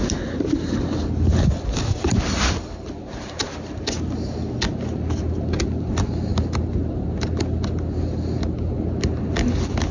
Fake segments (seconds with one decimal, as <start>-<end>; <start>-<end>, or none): none